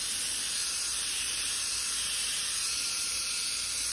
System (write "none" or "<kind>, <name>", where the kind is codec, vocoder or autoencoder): vocoder, BigVGAN v2